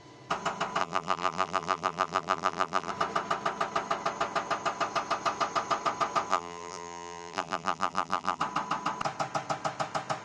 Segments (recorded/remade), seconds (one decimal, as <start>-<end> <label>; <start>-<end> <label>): 0.0-0.8 recorded; 0.8-2.9 remade; 2.9-6.3 recorded; 6.3-8.4 remade; 8.4-10.2 recorded